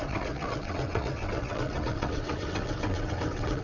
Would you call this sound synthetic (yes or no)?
yes